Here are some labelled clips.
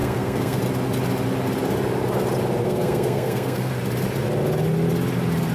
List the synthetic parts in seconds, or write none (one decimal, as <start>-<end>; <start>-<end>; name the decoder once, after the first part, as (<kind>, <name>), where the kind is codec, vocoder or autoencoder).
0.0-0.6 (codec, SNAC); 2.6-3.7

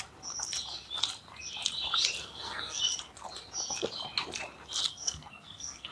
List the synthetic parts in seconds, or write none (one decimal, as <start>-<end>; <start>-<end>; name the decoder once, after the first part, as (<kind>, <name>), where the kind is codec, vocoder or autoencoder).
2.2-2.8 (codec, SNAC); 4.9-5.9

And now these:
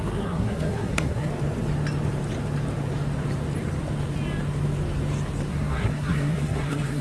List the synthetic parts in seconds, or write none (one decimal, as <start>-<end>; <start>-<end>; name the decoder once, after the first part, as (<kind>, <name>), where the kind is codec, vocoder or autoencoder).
0.0-1.3 (codec, SNAC); 5.5-7.0

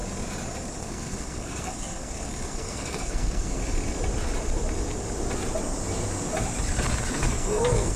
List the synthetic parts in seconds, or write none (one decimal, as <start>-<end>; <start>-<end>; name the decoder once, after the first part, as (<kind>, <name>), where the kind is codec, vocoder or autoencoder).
0.8-3.6 (codec, SNAC); 7.1-8.0

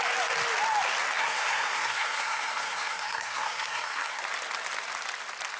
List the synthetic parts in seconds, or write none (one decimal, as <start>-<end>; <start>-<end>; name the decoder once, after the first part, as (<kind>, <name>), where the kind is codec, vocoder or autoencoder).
1.2-4.2 (codec, SNAC)

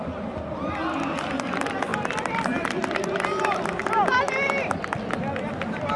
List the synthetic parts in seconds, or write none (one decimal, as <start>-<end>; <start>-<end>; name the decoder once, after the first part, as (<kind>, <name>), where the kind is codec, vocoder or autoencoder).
none

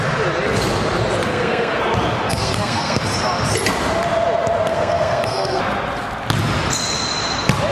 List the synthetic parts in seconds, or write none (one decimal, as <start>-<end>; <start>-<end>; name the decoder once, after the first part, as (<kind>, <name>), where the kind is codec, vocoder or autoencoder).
1.3-1.8 (codec, SNAC); 2.2-3.0; 4.7-5.6

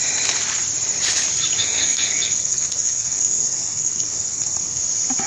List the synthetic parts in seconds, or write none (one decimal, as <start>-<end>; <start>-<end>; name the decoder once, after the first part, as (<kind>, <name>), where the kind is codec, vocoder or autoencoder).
1.6-4.8 (codec, SNAC)